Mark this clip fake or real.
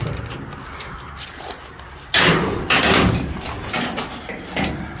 real